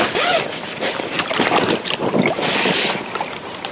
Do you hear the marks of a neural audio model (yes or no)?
no